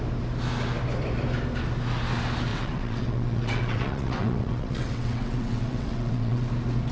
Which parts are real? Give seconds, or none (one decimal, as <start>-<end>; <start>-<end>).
0.0-2.5; 6.5-6.9